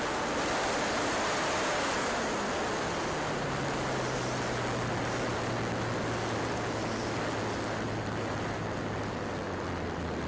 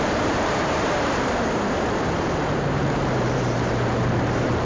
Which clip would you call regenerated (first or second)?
second